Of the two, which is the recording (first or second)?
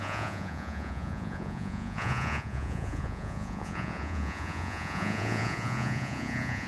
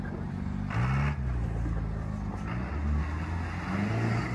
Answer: second